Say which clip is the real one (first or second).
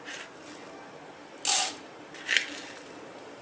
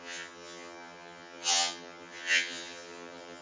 first